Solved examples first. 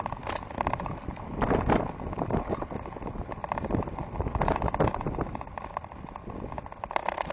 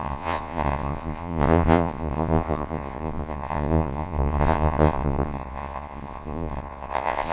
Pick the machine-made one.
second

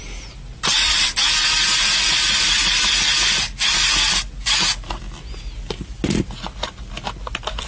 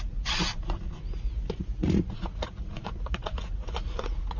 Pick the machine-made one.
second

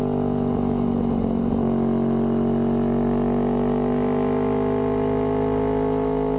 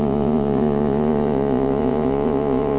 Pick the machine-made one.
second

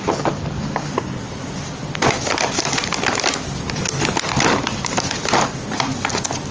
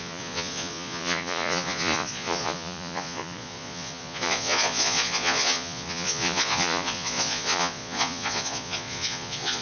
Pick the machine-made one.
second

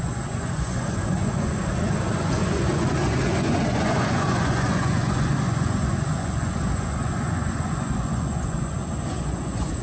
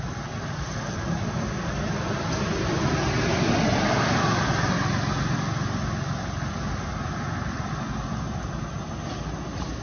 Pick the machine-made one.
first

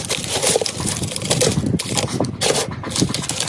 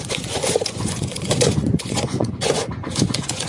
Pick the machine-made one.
second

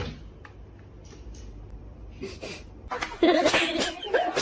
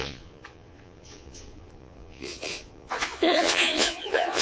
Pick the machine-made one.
second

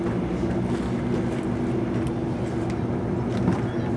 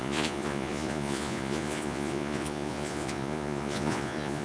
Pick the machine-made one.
second